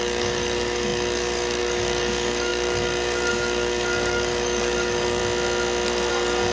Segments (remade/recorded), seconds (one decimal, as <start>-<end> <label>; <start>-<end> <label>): 0.0-5.2 remade; 5.2-6.1 recorded; 6.1-6.5 remade

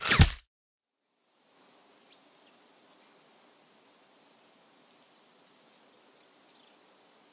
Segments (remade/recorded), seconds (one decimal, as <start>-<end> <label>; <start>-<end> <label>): 0.0-7.3 recorded

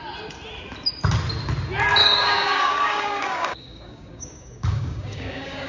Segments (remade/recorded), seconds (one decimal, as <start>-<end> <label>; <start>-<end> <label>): 0.0-2.0 recorded; 2.0-5.7 remade

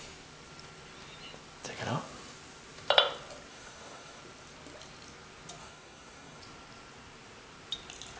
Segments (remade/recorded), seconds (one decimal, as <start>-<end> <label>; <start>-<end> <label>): 0.0-3.5 recorded; 3.5-4.2 remade; 4.2-5.6 recorded; 5.6-6.4 remade; 6.4-8.2 recorded

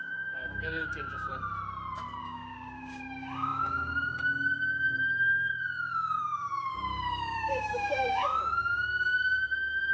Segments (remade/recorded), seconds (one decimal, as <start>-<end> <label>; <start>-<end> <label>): 0.0-1.3 remade; 1.3-2.2 recorded; 2.2-9.9 remade

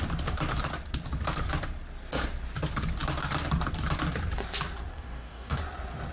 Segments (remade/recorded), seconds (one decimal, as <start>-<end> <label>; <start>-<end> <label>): 0.0-4.9 recorded; 4.9-5.6 remade; 5.6-6.1 recorded